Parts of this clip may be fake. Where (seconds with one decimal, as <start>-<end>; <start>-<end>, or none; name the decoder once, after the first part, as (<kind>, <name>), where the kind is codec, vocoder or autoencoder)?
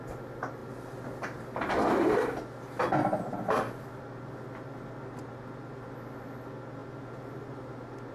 none